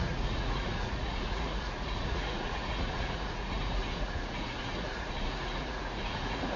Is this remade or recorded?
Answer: remade